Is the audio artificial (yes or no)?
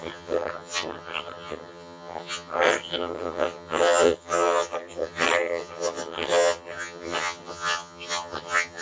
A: yes